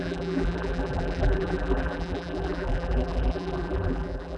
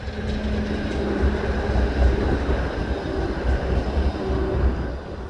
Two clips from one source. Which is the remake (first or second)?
first